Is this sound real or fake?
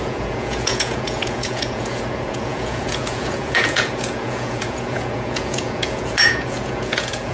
fake